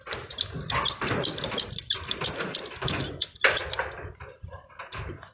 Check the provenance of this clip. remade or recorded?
recorded